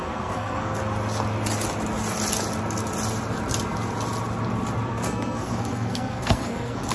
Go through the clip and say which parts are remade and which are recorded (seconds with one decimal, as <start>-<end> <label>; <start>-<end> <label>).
0.0-0.8 remade; 0.8-4.9 recorded; 4.9-6.9 remade